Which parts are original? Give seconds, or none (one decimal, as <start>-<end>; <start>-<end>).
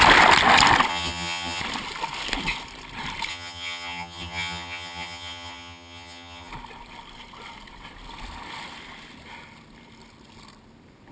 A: 0.0-0.9; 1.6-3.3; 6.5-11.1